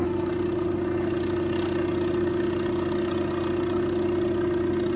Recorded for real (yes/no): yes